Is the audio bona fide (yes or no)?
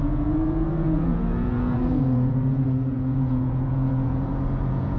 no